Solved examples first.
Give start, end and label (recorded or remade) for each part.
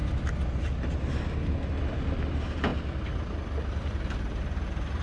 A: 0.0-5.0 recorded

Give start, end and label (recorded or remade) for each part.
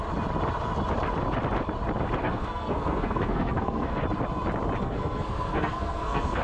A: 0.0-2.2 recorded; 2.2-4.0 remade; 4.0-4.8 recorded; 4.8-6.4 remade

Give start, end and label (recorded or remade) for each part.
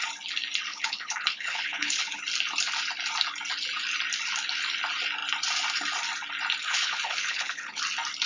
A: 0.0-0.7 recorded; 0.7-2.2 remade; 2.2-6.6 recorded; 6.6-7.8 remade; 7.8-8.3 recorded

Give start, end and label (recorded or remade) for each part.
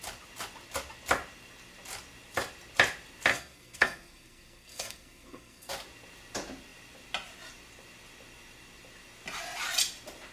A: 0.0-3.3 recorded; 3.3-5.7 remade; 5.7-10.3 recorded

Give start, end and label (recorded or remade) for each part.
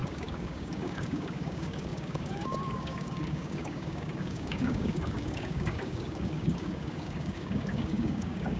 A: 0.0-8.6 remade